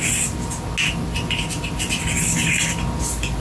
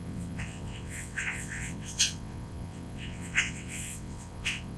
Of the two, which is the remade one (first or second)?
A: second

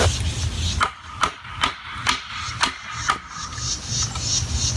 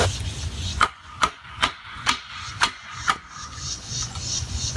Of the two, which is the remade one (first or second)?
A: second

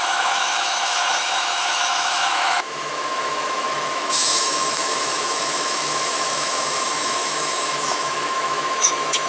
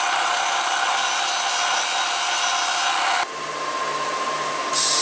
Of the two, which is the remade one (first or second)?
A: first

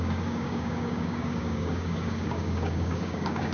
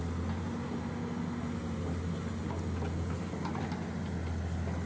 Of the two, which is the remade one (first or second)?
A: first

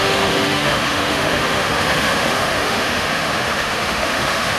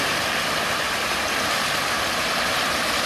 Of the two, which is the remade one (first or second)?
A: first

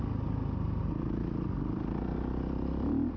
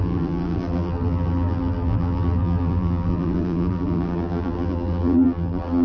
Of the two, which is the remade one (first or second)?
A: second